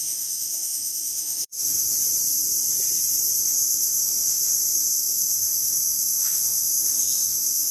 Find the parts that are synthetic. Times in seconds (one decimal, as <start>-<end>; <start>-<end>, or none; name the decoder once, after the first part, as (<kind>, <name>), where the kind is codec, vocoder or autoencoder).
0.0-1.9 (autoencoder, DAC-VAE); 3.4-7.7